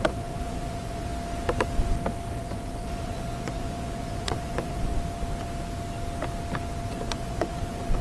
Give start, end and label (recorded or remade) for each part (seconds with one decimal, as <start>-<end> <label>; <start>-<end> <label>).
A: 0.0-1.1 remade; 1.1-2.4 recorded; 2.4-4.9 remade; 4.9-6.9 recorded; 6.9-8.0 remade